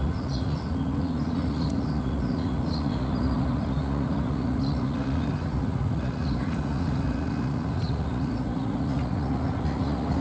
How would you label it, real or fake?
fake